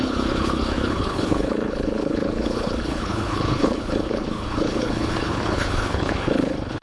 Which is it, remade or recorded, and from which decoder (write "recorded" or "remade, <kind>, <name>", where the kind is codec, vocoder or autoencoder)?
remade, codec, HILCodec